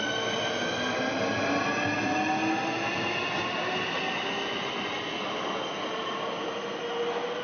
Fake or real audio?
real